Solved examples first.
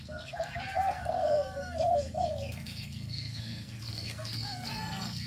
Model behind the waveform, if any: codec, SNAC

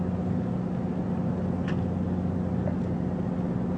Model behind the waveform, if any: none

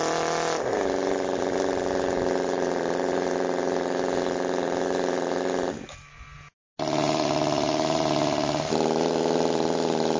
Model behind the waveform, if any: none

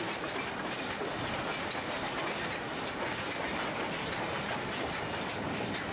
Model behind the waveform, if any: none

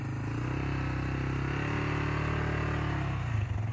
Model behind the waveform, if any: none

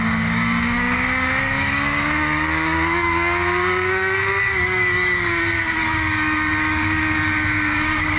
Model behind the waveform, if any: codec, DAC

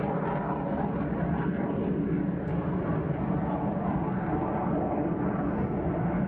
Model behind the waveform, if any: none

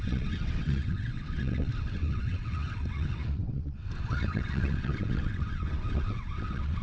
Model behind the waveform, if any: vocoder, WaveNeXt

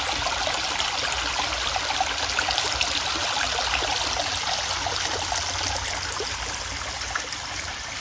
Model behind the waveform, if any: none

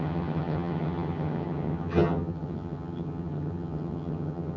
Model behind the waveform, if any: vocoder, HiFi-GAN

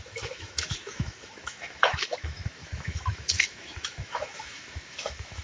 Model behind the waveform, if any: autoencoder, DAC-VAE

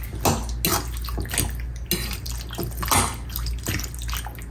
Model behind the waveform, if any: none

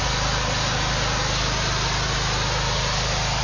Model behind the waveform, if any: none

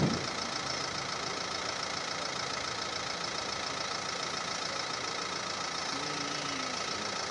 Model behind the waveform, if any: none